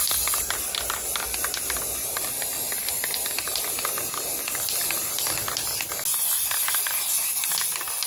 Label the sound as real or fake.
real